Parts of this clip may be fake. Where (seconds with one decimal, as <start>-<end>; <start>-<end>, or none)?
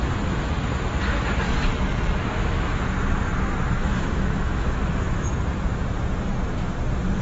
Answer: 1.7-2.8; 3.8-5.3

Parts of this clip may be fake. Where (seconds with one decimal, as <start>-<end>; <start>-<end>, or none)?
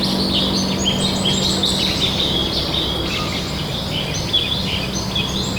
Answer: none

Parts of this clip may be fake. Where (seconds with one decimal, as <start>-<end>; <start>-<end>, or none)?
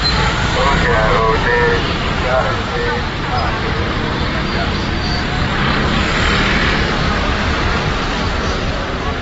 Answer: 0.0-0.9; 3.7-5.5; 6.0-7.3; 7.9-9.2